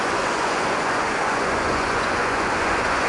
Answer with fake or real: fake